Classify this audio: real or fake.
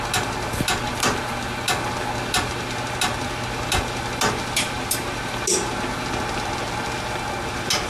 real